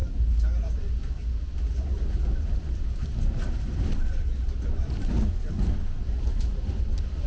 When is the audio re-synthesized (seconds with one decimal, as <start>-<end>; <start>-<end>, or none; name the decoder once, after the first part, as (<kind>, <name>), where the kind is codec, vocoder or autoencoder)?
none